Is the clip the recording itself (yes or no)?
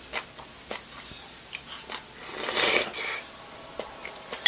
yes